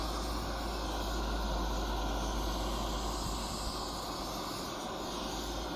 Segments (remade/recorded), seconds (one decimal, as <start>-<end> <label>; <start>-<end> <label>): 0.0-5.8 recorded